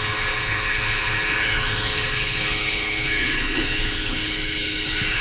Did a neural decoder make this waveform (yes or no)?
yes